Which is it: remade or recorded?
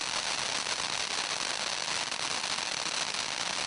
recorded